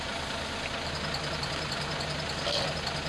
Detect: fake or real real